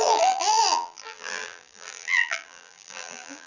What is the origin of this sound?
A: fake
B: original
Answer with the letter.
A